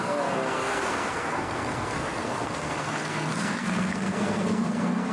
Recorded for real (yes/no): no